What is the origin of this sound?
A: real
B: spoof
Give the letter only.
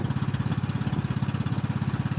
A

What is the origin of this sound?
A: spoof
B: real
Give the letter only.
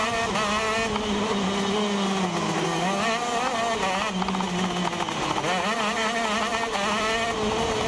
B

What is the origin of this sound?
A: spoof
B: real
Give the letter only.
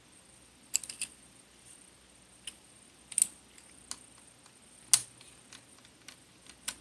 B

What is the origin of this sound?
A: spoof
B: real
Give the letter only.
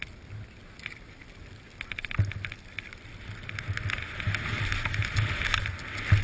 B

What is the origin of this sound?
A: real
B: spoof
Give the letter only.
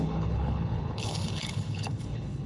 B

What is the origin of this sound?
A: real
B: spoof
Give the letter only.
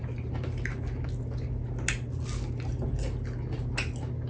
A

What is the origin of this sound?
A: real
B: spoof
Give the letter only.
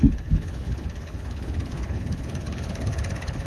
B